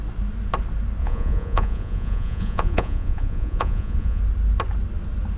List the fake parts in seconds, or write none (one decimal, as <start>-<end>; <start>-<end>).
1.0-4.2